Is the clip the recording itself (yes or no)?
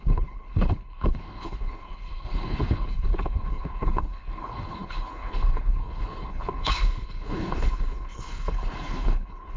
no